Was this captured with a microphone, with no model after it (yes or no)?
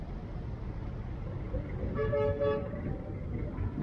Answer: yes